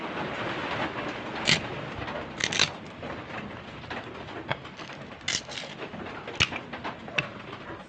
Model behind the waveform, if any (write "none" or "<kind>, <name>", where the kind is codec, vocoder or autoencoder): none